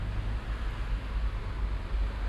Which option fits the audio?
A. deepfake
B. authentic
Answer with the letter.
B